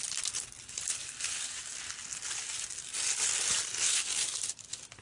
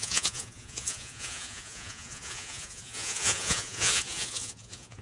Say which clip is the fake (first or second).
second